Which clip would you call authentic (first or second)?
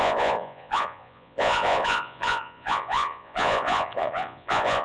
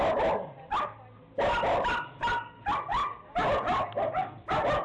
second